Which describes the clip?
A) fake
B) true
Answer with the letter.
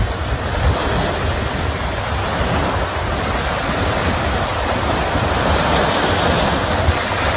B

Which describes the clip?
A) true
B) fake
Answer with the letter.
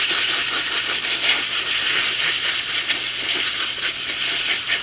A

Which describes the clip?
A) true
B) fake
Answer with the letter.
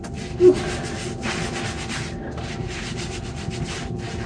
B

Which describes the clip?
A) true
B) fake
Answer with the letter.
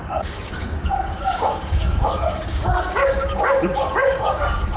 B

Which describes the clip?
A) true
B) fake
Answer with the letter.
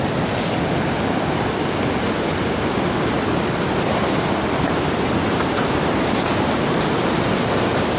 A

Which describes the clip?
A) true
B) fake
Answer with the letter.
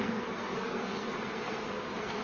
B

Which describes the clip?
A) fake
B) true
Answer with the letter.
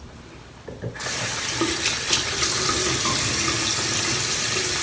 B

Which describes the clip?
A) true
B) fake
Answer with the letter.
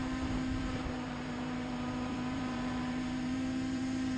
B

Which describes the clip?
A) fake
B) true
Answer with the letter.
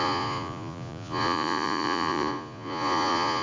A